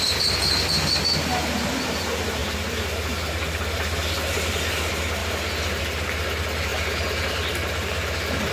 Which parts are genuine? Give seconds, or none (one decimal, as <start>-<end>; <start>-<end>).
0.0-8.5